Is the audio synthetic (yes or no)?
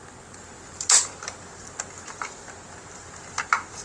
no